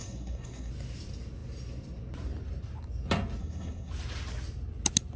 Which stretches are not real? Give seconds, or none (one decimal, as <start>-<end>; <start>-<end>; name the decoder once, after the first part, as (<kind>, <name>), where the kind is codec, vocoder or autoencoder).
0.0-0.7 (codec, SNAC); 3.4-3.9